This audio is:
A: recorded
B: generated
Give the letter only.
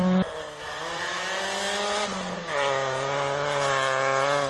A